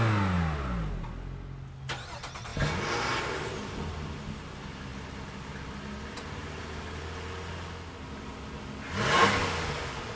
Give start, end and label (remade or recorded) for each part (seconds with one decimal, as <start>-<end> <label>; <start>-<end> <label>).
0.0-10.2 recorded